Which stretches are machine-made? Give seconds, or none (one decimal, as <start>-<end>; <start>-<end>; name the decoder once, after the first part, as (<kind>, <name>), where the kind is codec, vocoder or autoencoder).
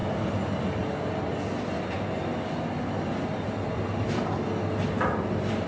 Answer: none